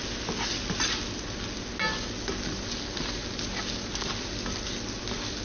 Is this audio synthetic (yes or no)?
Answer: no